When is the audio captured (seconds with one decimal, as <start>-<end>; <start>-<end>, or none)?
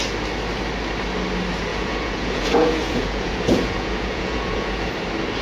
0.0-1.7; 4.9-5.4